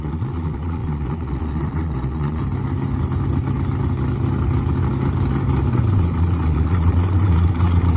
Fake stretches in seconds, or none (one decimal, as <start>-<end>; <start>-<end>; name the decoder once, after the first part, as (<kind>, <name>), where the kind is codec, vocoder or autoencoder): 0.0-2.4 (vocoder, Vocos); 5.9-8.0